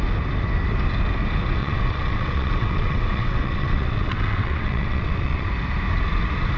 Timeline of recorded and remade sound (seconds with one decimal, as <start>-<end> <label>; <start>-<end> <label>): 0.0-1.6 recorded; 1.6-5.5 remade; 5.5-6.6 recorded